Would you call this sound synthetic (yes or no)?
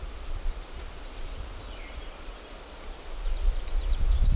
no